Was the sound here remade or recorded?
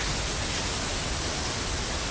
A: recorded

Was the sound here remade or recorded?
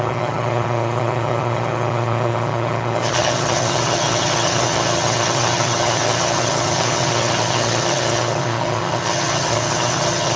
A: remade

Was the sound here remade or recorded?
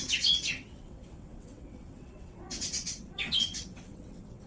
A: remade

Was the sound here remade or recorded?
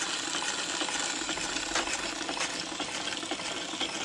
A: recorded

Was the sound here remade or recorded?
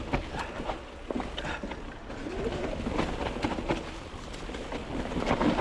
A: recorded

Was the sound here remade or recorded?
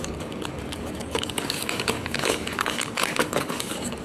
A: remade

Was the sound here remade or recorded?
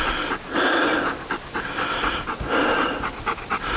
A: recorded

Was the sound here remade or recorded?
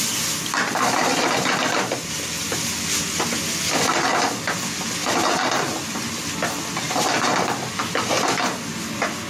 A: recorded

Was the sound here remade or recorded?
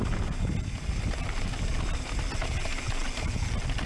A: recorded